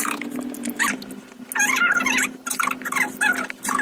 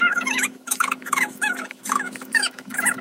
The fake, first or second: second